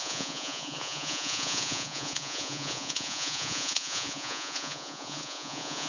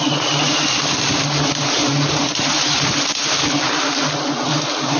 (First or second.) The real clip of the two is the second